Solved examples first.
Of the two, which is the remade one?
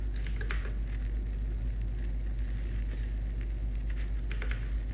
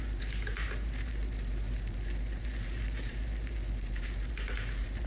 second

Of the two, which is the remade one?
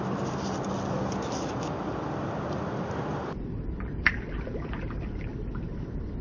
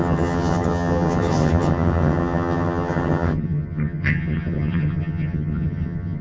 second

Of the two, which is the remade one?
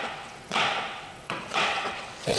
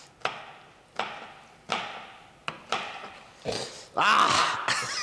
first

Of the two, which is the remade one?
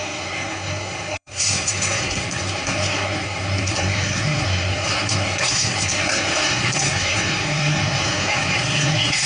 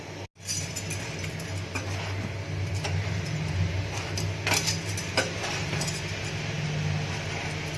first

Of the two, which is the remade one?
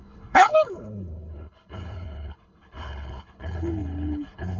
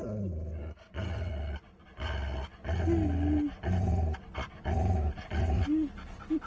first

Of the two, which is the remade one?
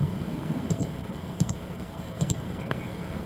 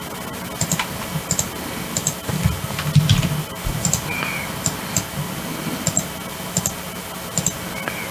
first